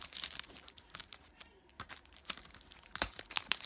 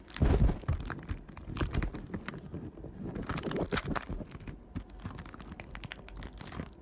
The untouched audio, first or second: second